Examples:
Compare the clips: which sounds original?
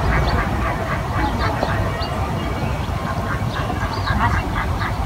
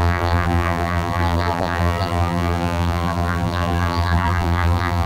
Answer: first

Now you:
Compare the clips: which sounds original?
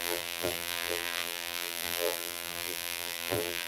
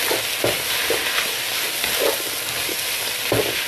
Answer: second